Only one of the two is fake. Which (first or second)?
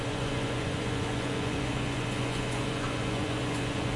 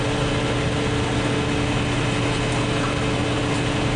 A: first